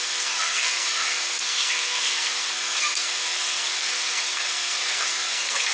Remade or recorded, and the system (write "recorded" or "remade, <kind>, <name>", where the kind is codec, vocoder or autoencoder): remade, codec, SNAC